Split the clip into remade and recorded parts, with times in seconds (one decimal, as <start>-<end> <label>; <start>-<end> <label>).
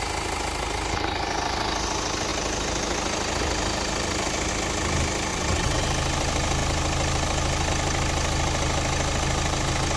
0.0-5.3 recorded; 5.3-5.8 remade; 5.8-10.0 recorded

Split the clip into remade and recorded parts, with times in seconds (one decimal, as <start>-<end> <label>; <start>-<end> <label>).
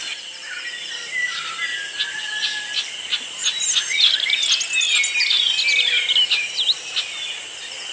0.0-7.9 recorded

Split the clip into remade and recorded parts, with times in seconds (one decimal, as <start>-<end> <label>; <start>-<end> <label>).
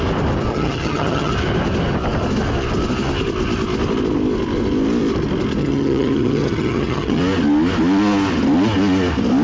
0.0-0.5 recorded; 0.5-1.3 remade; 1.3-5.6 recorded; 5.6-7.2 remade; 7.2-9.4 recorded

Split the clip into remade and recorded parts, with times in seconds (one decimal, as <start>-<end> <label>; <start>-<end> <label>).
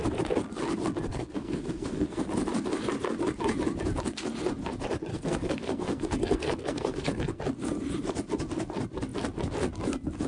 0.0-1.1 recorded; 1.1-2.2 remade; 2.2-5.1 recorded; 5.1-7.4 remade; 7.4-10.3 recorded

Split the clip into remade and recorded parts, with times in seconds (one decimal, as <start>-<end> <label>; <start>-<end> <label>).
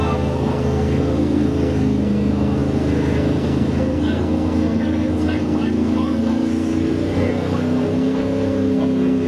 0.0-9.3 remade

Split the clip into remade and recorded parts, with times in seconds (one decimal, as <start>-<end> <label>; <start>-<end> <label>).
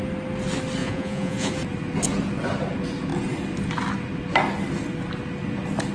0.0-0.8 recorded; 0.8-1.5 remade; 1.5-5.9 recorded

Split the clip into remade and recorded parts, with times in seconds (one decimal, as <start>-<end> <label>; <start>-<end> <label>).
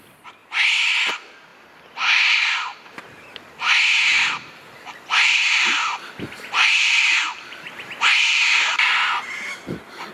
0.0-0.4 recorded; 0.4-1.1 remade; 1.1-1.5 recorded; 1.5-2.4 remade; 2.4-4.1 recorded; 4.1-8.9 remade; 8.9-10.1 recorded